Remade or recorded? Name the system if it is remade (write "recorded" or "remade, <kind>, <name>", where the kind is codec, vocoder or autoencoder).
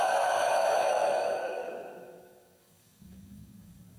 remade, codec, DAC